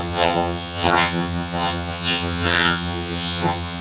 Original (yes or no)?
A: no